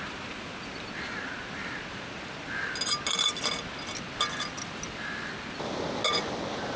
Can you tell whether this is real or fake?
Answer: real